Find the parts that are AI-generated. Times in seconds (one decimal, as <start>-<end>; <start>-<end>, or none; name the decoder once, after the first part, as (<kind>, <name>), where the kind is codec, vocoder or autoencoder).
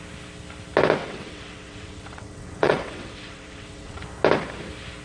1.0-4.0 (vocoder, WaveNeXt)